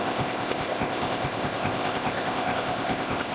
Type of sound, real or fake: fake